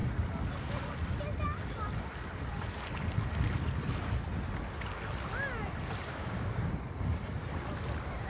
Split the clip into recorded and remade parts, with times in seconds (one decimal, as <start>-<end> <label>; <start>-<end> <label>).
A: 0.0-6.2 recorded; 6.2-6.8 remade; 6.8-8.3 recorded